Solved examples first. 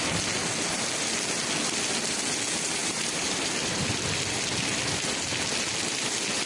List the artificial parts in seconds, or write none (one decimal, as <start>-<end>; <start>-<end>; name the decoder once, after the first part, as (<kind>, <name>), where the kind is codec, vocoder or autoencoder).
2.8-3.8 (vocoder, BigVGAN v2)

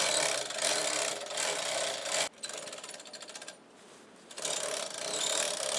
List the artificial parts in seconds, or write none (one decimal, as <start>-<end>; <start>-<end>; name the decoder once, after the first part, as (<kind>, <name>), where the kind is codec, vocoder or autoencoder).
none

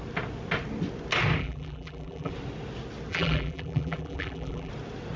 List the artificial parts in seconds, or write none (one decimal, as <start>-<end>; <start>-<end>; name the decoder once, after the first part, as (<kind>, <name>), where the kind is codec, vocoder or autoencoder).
1.4-2.3 (vocoder, BigVGAN v2); 3.1-4.7

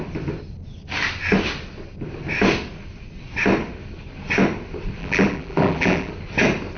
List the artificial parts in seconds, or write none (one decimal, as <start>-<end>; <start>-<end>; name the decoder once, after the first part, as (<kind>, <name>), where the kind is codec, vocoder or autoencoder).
5.0-6.1 (vocoder, BigVGAN v2)

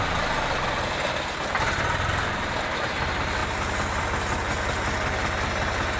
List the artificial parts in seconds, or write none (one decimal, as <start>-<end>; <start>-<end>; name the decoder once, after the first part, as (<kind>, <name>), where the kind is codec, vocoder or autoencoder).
none

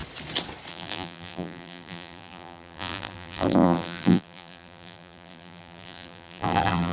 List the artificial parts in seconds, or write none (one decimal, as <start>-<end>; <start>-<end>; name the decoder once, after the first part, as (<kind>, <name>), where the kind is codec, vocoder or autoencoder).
0.7-6.9 (vocoder, BigVGAN v2)

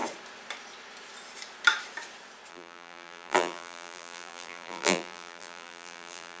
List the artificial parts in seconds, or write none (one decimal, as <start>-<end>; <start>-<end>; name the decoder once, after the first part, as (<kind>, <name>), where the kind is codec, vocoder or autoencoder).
2.5-6.4 (vocoder, BigVGAN v2)